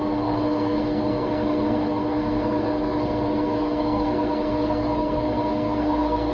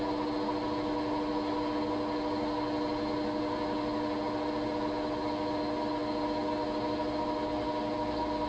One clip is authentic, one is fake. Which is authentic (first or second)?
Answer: second